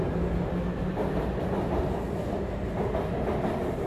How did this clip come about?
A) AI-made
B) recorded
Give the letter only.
B